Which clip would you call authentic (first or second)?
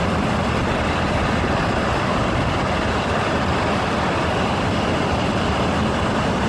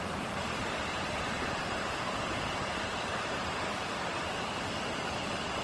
first